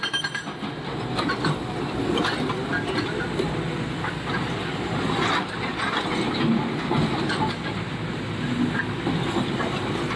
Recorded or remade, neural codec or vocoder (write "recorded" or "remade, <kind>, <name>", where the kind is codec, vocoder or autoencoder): recorded